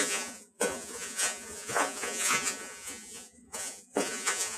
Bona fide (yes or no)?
no